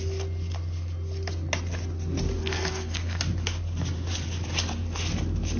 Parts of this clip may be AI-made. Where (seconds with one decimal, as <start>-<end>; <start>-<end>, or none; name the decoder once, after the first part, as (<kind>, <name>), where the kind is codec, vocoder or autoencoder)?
2.4-3.2 (codec, SNAC)